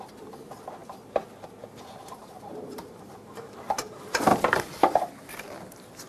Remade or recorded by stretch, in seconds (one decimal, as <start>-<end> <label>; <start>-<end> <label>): 0.0-2.2 recorded; 2.2-3.1 remade; 3.1-6.1 recorded